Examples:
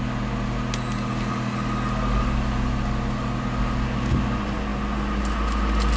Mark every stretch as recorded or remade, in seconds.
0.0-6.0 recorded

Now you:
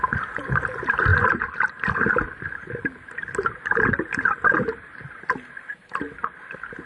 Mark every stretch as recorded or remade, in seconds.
0.0-6.9 recorded